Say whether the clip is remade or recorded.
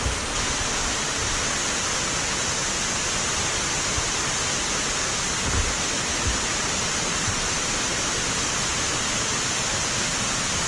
recorded